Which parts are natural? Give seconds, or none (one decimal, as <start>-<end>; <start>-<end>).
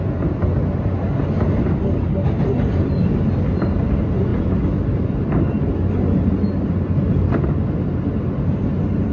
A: 0.0-9.1